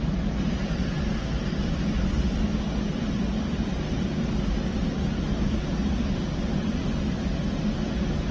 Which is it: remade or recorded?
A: recorded